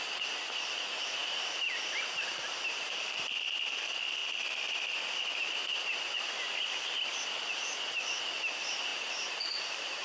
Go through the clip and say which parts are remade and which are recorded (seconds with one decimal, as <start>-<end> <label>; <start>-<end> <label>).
0.0-4.2 recorded; 4.2-6.3 remade; 6.3-10.0 recorded